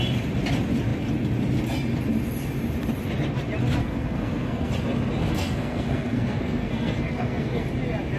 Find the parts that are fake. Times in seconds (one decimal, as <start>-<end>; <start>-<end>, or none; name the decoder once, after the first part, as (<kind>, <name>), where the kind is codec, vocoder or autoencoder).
3.8-4.7 (codec, SNAC); 5.2-7.7